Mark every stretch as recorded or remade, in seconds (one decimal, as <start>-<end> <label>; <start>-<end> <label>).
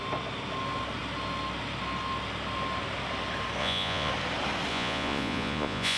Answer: 0.0-3.6 recorded; 3.6-4.1 remade; 4.1-4.7 recorded; 4.7-6.0 remade